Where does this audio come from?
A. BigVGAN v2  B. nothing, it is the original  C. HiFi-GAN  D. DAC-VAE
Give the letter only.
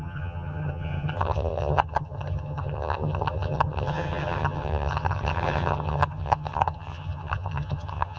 C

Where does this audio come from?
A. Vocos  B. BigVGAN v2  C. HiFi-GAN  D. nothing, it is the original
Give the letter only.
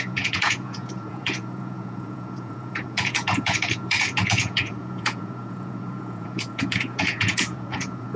A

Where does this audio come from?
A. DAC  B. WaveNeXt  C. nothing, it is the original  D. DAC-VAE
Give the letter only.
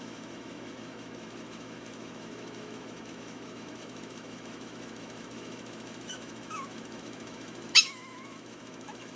D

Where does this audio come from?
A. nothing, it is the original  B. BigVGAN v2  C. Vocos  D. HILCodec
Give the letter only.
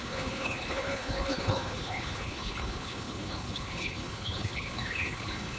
D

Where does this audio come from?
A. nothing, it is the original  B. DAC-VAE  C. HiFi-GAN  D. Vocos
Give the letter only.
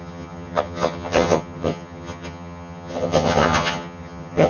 C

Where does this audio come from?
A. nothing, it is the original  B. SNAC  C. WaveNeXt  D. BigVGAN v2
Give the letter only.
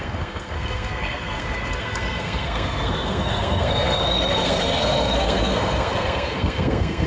B